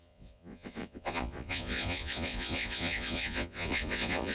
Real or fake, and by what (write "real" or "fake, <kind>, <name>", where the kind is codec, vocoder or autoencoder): fake, vocoder, Vocos